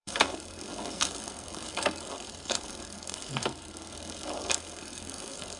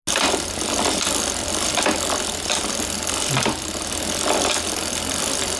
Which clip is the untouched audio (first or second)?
second